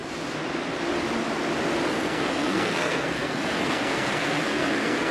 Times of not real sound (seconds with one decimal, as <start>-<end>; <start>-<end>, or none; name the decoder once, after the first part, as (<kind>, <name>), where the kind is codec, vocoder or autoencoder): 1.9-5.1 (codec, SNAC)